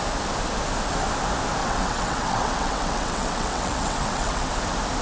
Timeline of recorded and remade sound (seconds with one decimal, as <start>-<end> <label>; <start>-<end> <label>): 0.0-1.6 recorded; 1.6-4.5 remade; 4.5-5.0 recorded